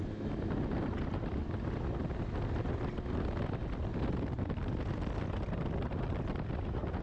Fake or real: real